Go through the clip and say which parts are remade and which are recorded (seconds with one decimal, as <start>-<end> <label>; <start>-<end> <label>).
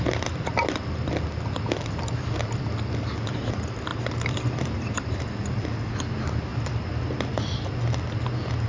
0.0-3.9 recorded; 3.9-5.3 remade; 5.3-8.7 recorded